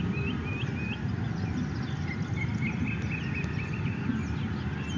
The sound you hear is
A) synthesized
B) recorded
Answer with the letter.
B